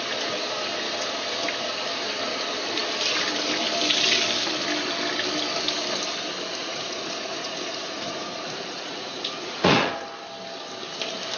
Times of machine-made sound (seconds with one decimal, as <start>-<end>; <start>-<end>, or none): 6.6-10.0